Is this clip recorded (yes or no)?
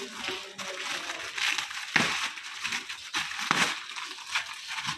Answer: yes